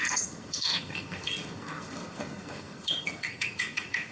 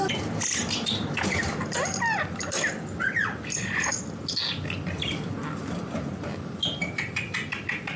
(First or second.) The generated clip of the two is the first